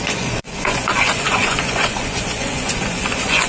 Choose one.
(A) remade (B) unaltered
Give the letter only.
A